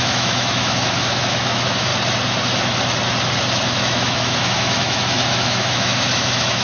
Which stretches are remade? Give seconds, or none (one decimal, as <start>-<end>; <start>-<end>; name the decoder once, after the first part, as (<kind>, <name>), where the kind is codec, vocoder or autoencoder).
0.0-1.9 (autoencoder, DAC-VAE); 3.8-6.6